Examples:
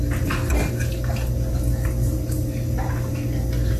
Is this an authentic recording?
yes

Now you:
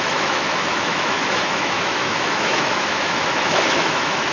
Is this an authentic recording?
no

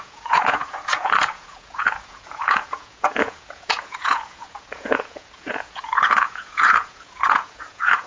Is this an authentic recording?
no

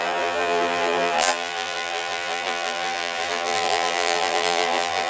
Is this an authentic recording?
no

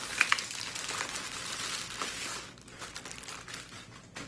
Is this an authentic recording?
yes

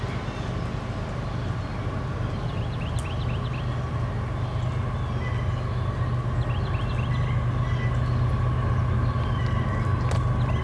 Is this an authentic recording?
yes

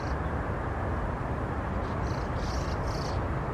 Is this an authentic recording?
yes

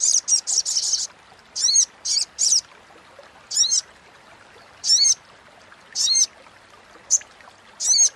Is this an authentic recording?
yes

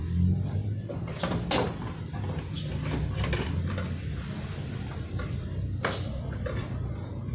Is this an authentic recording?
yes